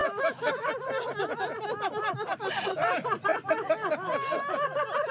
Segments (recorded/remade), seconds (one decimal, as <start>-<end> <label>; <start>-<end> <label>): 0.0-0.7 remade; 0.7-5.1 recorded